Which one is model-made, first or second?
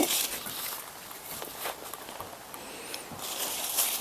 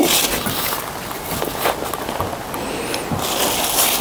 first